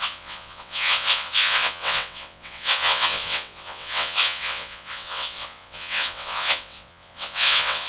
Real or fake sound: fake